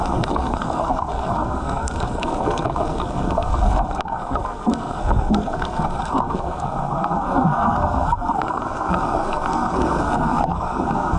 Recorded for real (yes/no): no